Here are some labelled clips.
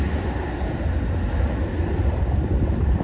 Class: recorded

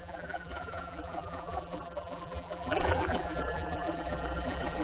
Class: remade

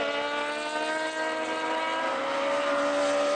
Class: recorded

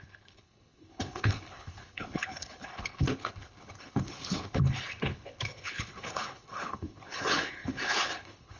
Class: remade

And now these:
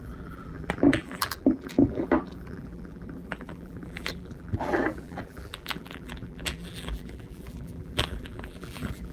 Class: remade